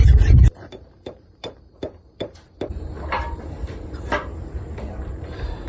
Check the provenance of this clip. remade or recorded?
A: remade